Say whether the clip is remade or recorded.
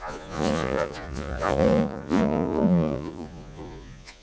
remade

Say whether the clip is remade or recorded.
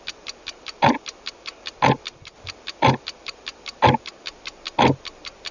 recorded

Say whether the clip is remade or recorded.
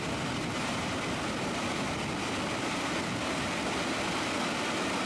recorded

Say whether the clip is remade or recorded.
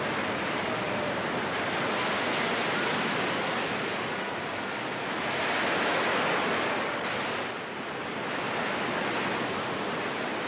recorded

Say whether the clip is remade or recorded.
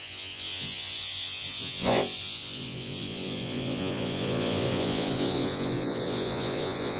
remade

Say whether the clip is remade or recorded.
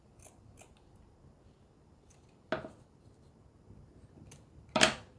recorded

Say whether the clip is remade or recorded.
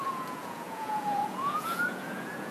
remade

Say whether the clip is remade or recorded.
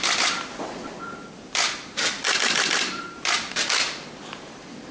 recorded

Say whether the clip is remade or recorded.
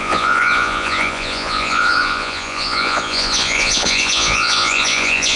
remade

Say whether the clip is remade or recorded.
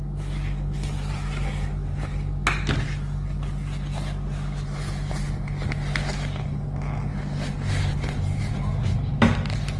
recorded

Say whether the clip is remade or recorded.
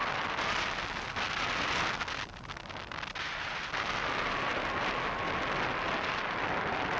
recorded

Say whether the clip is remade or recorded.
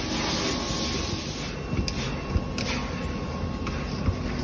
recorded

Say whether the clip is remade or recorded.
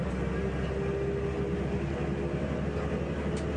recorded